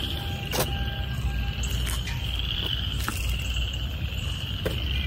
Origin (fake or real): real